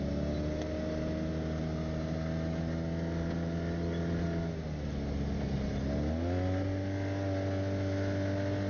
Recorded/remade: recorded